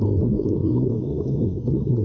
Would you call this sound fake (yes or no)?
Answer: yes